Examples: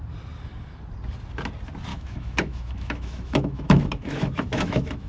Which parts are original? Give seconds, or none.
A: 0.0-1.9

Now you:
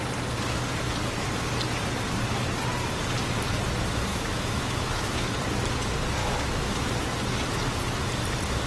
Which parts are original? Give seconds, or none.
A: 0.0-4.1; 5.3-6.2; 6.9-8.7

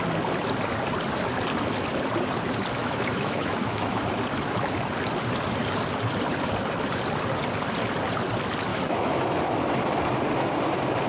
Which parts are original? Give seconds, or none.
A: 0.0-2.8; 4.0-8.7; 9.4-11.1

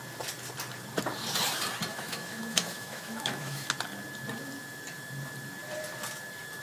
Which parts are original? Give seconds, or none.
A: 0.0-1.9; 3.7-6.6

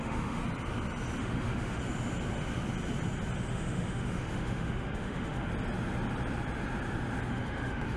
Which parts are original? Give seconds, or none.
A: 0.4-1.2; 1.8-3.5; 5.5-7.3

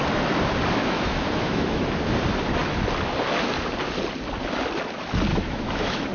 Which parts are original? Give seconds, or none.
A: 0.0-0.8; 1.8-5.3